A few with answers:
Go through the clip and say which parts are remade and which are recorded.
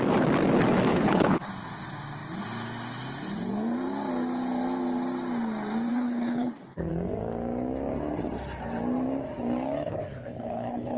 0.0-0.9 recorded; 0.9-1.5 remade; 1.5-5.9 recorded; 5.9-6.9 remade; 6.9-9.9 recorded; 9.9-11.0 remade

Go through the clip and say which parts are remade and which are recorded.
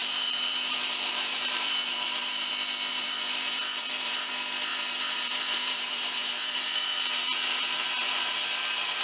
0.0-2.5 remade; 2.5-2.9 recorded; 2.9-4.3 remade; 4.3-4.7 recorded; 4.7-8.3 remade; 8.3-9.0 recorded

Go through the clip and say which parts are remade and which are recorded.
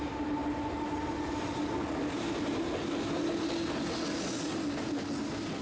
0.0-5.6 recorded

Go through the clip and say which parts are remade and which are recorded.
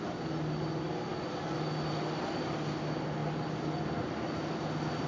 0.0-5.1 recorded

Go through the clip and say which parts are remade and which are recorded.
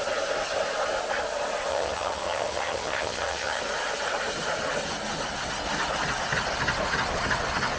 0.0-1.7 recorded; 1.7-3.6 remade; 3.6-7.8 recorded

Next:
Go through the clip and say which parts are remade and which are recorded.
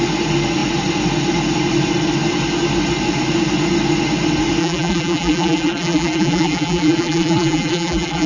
0.0-4.6 recorded; 4.6-8.3 remade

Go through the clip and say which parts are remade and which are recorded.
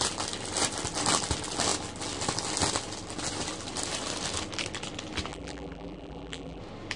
0.0-5.3 recorded; 5.3-6.6 remade; 6.6-7.0 recorded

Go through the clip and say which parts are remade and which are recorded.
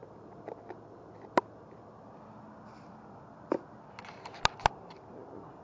0.0-5.6 recorded